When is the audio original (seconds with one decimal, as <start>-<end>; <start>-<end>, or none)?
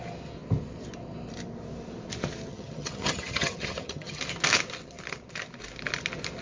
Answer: 0.0-2.5; 4.2-6.4